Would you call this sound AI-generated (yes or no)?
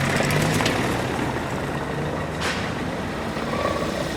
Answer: no